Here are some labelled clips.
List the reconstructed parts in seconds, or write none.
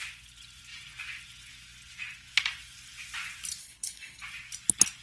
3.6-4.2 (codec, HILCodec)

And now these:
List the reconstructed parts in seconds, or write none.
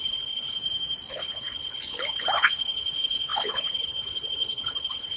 0.0-0.6 (codec, HILCodec); 1.1-5.2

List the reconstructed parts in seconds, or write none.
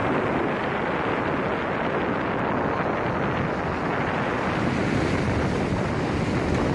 none